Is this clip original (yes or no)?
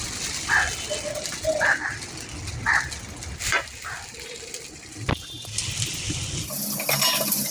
yes